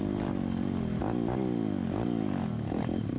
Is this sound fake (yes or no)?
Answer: no